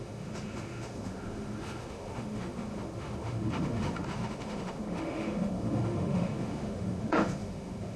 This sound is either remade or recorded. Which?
remade